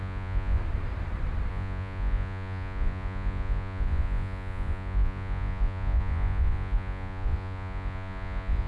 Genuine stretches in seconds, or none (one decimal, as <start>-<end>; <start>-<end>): 0.6-1.5